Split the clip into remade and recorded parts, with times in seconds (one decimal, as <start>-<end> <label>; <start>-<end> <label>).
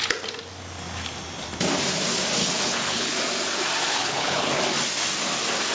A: 0.0-2.4 recorded; 2.4-3.1 remade; 3.1-3.9 recorded; 3.9-4.6 remade; 4.6-5.7 recorded